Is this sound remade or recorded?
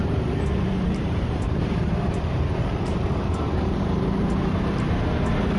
remade